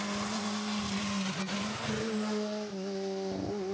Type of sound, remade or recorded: recorded